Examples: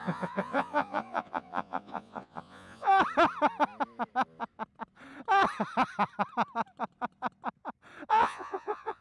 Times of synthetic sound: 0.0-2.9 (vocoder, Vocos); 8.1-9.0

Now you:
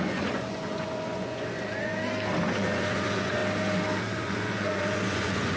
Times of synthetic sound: 0.0-1.9 (vocoder, Vocos); 2.5-3.4; 4.0-5.6

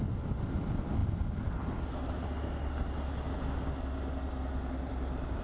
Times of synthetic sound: none

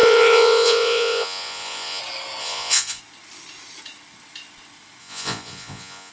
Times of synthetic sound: 0.0-2.0 (vocoder, Vocos); 2.4-3.0; 5.0-6.1

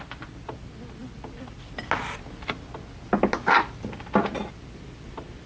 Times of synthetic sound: none

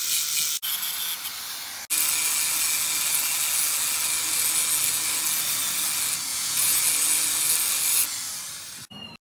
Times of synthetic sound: 6.3-6.8 (vocoder, Vocos)